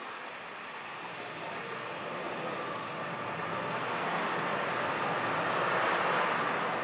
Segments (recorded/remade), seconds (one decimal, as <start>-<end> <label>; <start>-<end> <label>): 0.0-3.5 recorded; 3.5-4.2 remade; 4.2-6.8 recorded